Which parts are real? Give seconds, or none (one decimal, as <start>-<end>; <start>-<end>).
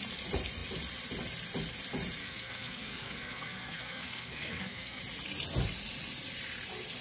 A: 0.0-2.2; 5.0-7.0